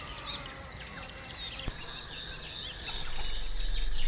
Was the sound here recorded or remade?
recorded